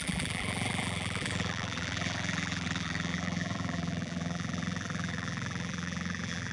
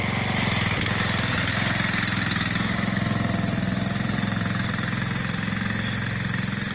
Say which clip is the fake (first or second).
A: first